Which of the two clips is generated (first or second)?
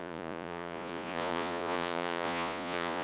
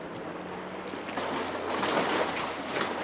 first